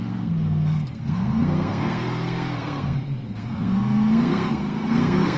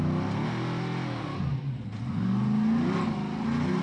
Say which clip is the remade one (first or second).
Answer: first